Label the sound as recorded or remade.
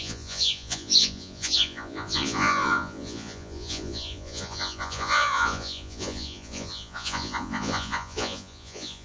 remade